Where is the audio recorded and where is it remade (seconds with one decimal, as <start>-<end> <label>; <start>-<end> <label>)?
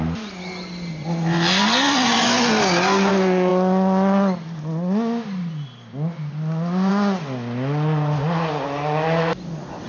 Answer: 0.0-9.9 recorded